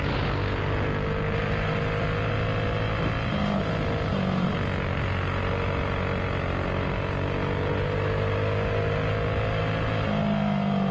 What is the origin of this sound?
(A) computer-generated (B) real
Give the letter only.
B